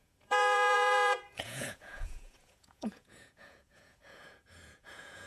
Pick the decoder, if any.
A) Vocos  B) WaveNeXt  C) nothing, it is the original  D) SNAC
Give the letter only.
A